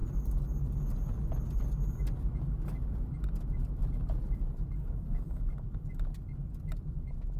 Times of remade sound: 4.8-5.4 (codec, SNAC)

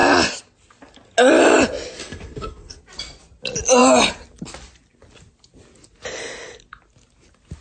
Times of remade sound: 2.0-2.8 (codec, SNAC)

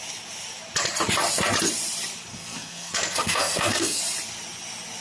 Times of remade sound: 2.3-4.0 (codec, SNAC)

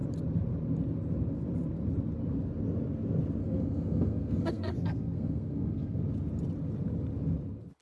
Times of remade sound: 3.4-6.0 (codec, SNAC)

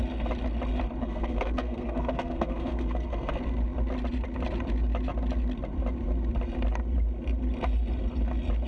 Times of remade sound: 1.0-3.4 (codec, SNAC)

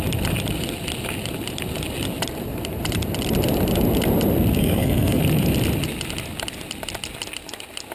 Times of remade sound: 4.6-5.2 (codec, SNAC)